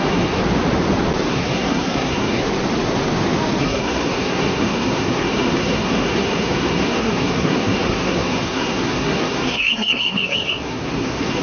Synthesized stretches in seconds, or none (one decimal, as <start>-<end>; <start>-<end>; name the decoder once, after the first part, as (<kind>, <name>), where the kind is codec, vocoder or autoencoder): 0.0-0.4 (codec, SNAC); 1.3-2.4; 3.6-11.4